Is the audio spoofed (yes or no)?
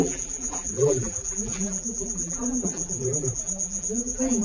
yes